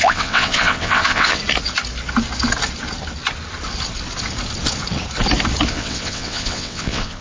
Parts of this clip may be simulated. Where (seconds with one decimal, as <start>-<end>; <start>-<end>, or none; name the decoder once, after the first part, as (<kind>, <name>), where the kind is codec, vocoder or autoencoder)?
0.0-1.4 (vocoder, WaveNeXt); 5.7-7.2